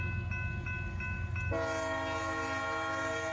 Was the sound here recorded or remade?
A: recorded